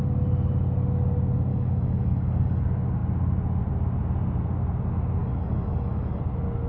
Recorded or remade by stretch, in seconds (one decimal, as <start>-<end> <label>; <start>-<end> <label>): 0.0-1.5 recorded; 1.5-2.6 remade; 2.6-5.2 recorded; 5.2-6.2 remade; 6.2-6.7 recorded